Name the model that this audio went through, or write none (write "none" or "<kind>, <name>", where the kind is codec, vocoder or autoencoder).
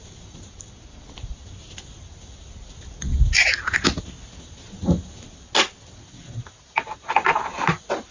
none